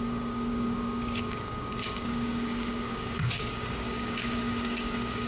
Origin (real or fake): fake